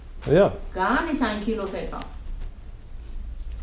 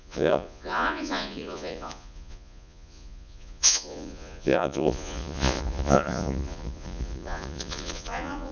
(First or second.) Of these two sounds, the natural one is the first